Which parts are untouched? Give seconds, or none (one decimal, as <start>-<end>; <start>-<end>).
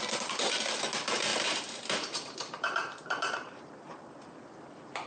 0.0-1.3; 3.9-5.1